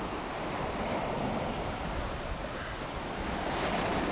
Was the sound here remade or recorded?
recorded